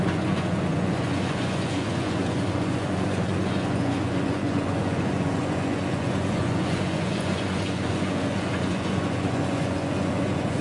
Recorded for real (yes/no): no